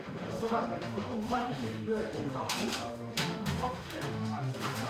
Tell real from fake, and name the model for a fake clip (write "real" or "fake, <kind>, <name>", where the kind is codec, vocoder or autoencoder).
fake, autoencoder, DAC-VAE